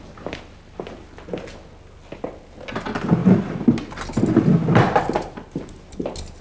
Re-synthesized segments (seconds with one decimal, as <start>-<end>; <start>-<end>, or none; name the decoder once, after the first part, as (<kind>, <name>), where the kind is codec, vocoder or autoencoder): none